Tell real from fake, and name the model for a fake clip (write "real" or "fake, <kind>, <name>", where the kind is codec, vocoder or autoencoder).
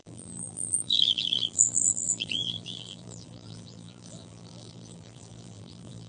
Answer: fake, vocoder, BigVGAN v2